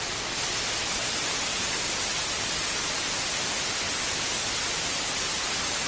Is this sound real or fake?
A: real